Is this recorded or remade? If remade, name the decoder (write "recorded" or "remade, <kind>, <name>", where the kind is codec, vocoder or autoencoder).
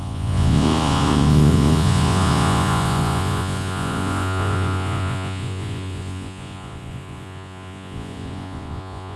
remade, vocoder, Vocos